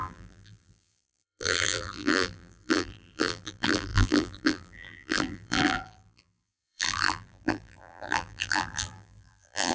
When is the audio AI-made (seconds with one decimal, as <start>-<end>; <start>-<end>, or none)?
0.0-9.7